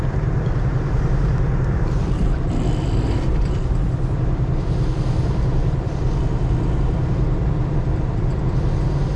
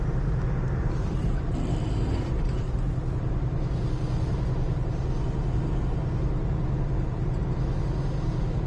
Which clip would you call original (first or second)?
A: second